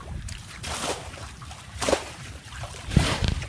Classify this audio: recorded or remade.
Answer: remade